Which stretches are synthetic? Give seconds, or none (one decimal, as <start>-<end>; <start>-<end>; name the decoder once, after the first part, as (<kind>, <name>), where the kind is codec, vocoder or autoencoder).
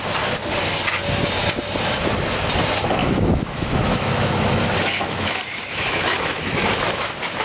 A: 3.0-7.4 (autoencoder, DAC-VAE)